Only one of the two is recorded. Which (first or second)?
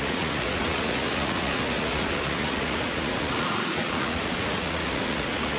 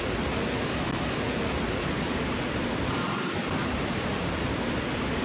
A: second